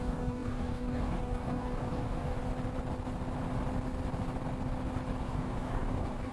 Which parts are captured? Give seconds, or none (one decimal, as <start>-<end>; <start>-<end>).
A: 2.4-5.2

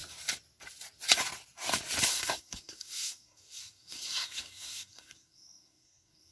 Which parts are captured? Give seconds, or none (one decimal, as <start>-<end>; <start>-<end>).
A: 0.0-2.1

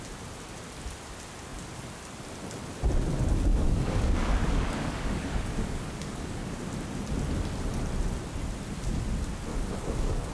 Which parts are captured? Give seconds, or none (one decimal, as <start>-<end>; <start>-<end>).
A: 0.0-3.5; 6.6-9.5

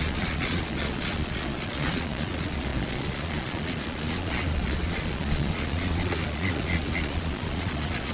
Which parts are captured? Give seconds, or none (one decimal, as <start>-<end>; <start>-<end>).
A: none

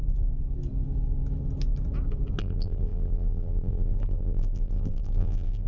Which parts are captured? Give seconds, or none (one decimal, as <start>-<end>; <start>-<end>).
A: 0.0-2.4

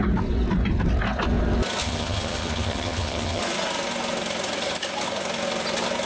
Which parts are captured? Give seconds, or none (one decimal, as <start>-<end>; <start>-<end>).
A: 0.0-1.8; 3.4-6.1

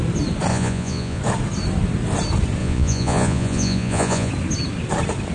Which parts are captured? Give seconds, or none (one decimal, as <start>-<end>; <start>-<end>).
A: 0.0-0.5; 1.2-2.6; 4.3-5.3